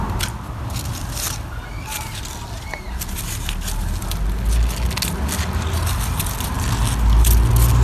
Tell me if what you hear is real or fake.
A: real